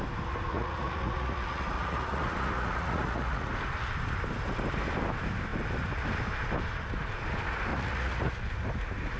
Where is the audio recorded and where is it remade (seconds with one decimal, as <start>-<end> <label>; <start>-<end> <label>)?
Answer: 0.0-0.5 recorded; 0.5-3.5 remade; 3.5-7.7 recorded; 7.7-8.4 remade; 8.4-9.2 recorded